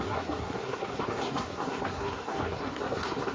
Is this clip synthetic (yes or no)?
yes